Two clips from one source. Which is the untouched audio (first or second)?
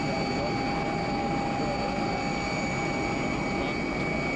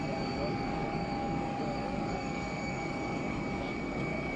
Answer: first